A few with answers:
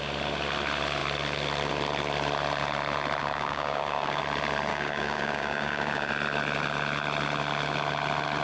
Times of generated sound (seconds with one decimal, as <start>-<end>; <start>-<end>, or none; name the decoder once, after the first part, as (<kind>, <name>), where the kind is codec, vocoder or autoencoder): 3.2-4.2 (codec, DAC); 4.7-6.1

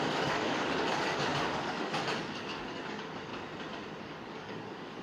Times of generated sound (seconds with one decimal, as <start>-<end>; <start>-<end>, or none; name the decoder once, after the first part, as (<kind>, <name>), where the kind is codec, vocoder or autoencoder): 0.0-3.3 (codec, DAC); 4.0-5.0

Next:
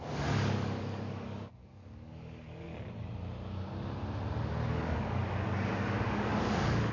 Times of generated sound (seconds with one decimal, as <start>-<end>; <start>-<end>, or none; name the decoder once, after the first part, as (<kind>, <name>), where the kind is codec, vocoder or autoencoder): 0.0-2.7 (codec, DAC); 4.7-6.9